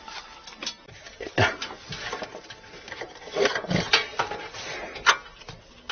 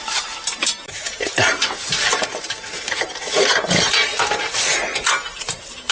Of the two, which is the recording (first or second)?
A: first